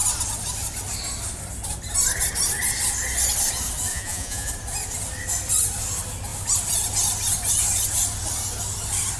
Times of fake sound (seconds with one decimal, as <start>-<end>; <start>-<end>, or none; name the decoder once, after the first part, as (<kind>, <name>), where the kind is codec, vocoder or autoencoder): 3.9-4.5 (vocoder, Vocos)